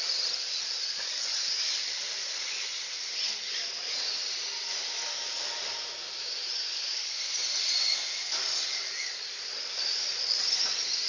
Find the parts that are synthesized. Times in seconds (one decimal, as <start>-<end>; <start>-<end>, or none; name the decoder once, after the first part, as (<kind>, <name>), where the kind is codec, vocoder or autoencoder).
0.0-3.4 (vocoder, BigVGAN v2); 5.3-6.2